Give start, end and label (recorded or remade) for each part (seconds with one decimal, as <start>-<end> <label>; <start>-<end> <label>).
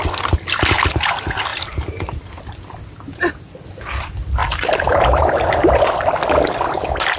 0.0-1.5 recorded; 1.5-2.3 remade; 2.3-4.4 recorded; 4.4-5.8 remade; 5.8-7.2 recorded